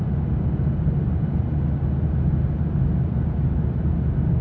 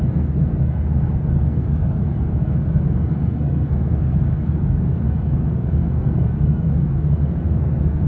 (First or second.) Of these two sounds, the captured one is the first